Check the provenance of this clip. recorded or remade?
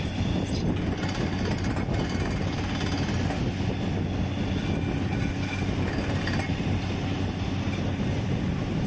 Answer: recorded